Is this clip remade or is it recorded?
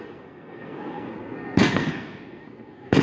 remade